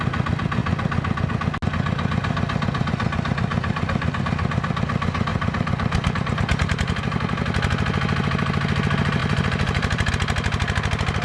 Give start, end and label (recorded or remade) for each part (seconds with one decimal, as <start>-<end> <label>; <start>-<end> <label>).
0.0-3.5 recorded; 3.5-4.2 remade; 4.2-5.3 recorded; 5.3-7.0 remade; 7.0-9.2 recorded; 9.2-10.1 remade; 10.1-11.2 recorded